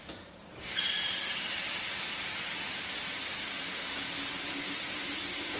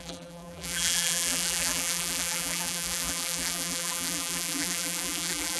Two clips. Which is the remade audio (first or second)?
second